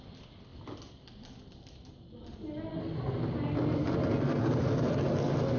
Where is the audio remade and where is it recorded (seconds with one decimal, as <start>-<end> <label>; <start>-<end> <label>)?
0.0-5.6 recorded